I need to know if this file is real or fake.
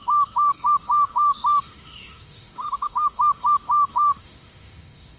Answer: fake